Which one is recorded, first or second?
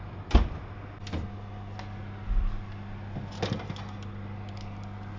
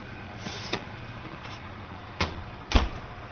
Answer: first